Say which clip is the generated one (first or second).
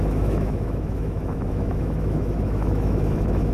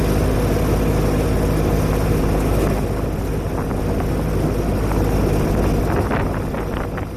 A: first